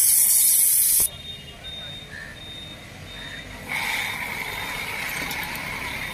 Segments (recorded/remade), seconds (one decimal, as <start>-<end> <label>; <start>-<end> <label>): 0.0-6.1 recorded